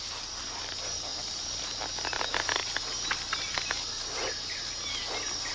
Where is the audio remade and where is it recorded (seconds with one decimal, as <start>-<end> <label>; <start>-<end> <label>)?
0.0-1.1 recorded; 1.1-2.2 remade; 2.2-5.5 recorded